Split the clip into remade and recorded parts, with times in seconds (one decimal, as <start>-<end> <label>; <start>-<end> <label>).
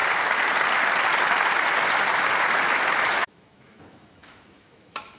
0.0-3.1 recorded; 3.1-5.2 remade